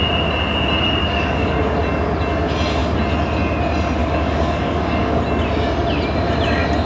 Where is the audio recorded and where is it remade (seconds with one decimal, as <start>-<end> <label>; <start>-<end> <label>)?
0.0-1.0 recorded; 1.0-1.6 remade; 1.6-4.0 recorded; 4.0-5.2 remade; 5.2-6.9 recorded